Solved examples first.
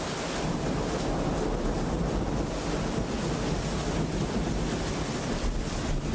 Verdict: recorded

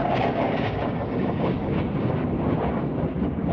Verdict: remade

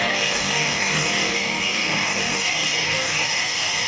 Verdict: remade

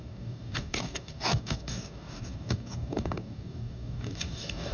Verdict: remade